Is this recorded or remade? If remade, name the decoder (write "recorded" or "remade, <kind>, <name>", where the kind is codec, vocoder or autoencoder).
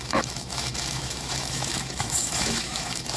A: remade, autoencoder, DAC-VAE